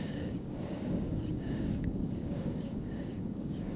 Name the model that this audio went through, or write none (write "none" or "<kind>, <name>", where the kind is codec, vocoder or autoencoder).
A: codec, DAC